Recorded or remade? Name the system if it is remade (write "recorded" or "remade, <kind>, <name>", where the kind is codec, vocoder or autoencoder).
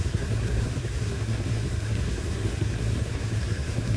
remade, codec, SNAC